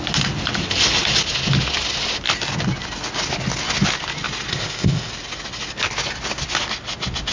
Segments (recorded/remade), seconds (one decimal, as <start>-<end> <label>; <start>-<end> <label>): 0.0-4.5 recorded; 4.5-5.1 remade; 5.1-7.3 recorded